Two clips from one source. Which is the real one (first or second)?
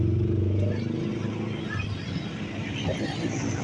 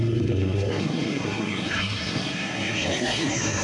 first